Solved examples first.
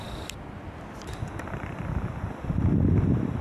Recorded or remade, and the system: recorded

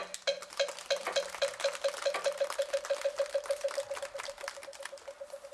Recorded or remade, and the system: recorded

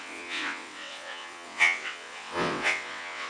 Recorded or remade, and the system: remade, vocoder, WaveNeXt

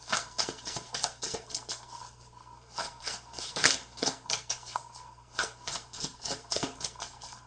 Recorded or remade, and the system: remade, codec, SNAC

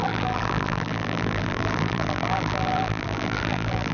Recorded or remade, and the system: remade, vocoder, BigVGAN v2